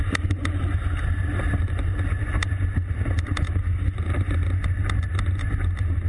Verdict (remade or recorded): recorded